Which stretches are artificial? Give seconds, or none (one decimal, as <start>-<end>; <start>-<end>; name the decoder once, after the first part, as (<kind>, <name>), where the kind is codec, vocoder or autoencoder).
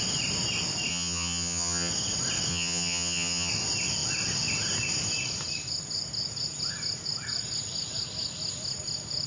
0.9-1.9 (vocoder, HiFi-GAN); 2.5-3.5